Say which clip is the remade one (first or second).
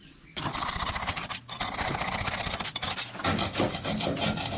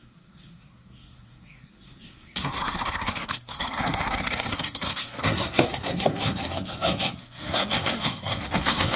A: second